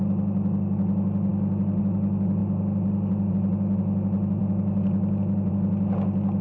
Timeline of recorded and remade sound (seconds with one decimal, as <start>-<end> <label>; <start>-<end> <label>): 0.0-6.4 recorded